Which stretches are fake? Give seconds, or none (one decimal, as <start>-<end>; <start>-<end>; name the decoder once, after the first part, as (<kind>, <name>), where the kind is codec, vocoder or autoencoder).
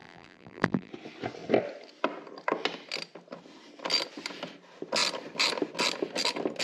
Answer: 0.0-0.9 (vocoder, BigVGAN v2)